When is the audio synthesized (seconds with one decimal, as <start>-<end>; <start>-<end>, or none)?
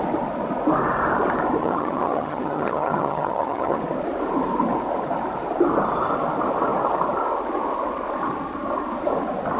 1.6-3.8